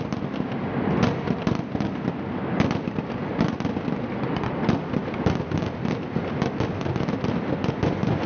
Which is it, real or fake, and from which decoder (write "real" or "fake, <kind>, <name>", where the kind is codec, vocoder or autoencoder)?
real